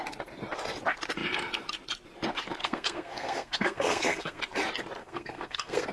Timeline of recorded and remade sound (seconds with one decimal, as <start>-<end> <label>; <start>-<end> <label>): 0.0-2.6 recorded; 2.6-4.4 remade; 4.4-5.0 recorded; 5.0-5.9 remade